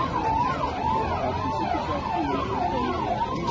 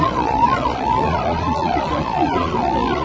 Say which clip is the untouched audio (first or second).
first